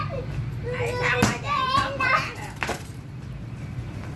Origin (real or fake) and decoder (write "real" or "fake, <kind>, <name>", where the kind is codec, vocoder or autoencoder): real